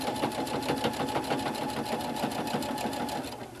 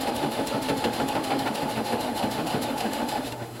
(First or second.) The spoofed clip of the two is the second